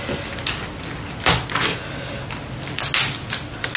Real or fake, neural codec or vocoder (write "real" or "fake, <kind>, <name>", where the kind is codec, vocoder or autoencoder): real